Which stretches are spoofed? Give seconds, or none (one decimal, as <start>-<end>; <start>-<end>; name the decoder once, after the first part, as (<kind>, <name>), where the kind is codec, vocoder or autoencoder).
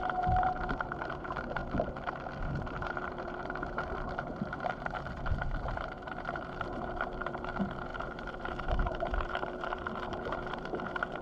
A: 0.0-1.6 (vocoder, BigVGAN v2); 2.4-11.2